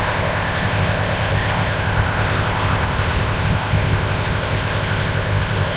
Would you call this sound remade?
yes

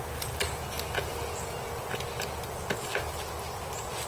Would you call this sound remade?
no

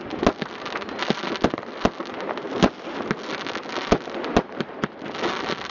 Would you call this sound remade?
no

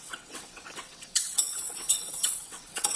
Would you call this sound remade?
yes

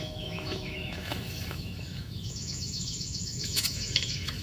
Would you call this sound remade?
yes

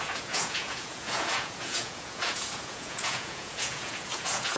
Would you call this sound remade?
yes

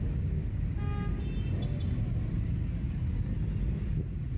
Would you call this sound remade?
no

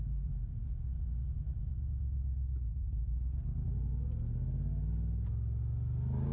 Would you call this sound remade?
no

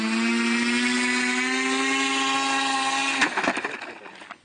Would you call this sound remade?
no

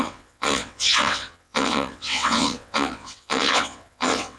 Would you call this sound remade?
yes